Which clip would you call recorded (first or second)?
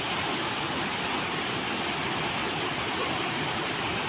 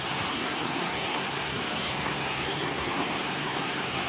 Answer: first